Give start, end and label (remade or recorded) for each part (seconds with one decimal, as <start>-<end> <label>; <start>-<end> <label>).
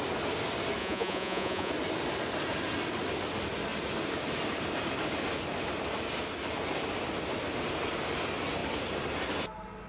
0.0-0.8 recorded; 0.8-1.7 remade; 1.7-9.9 recorded